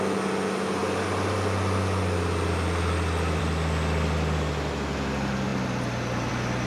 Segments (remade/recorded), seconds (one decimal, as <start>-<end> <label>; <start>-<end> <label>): 0.0-6.7 recorded

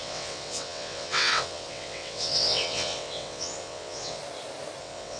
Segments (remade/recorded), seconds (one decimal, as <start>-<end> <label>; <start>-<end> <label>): 0.0-4.2 remade; 4.2-4.8 recorded; 4.8-5.2 remade

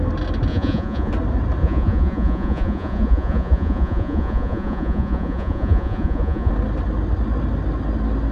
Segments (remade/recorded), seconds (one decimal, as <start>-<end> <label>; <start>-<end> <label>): 0.0-0.5 recorded; 0.5-1.1 remade; 1.1-1.6 recorded; 1.6-6.5 remade; 6.5-8.3 recorded

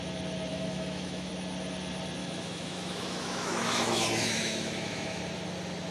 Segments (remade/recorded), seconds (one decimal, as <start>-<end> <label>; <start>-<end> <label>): 0.0-0.5 recorded; 0.5-1.3 remade; 1.3-2.2 recorded; 2.2-5.2 remade; 5.2-5.9 recorded

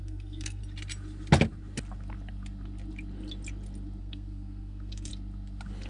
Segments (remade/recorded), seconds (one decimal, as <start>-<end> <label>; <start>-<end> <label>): 0.0-0.6 remade; 0.6-4.0 recorded; 4.0-5.1 remade; 5.1-5.9 recorded

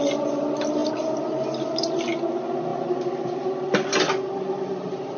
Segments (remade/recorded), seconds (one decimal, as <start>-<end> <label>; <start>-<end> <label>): 0.0-5.2 recorded